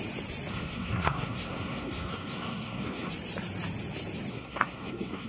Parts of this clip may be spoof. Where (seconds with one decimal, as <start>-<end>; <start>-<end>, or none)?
0.5-3.1; 4.3-5.3